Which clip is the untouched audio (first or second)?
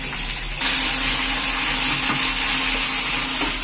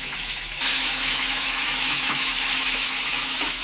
first